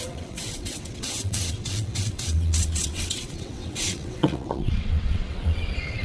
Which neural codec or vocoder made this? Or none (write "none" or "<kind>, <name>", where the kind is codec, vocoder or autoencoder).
vocoder, WaveNeXt